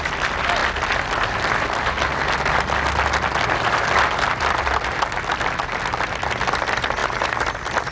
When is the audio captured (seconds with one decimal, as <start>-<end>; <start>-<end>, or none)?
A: 0.0-7.0; 7.5-7.9